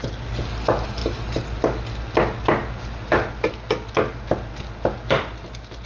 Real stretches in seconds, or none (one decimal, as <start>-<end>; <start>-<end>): 0.0-5.9